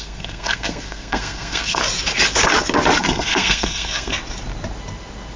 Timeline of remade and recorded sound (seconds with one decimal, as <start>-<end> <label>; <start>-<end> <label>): 0.0-1.8 remade; 1.8-3.0 recorded; 3.0-4.1 remade; 4.1-5.4 recorded